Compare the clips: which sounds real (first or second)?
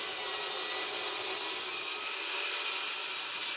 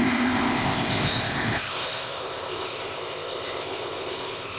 first